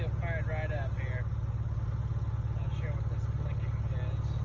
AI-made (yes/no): no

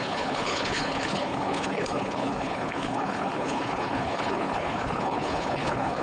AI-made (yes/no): yes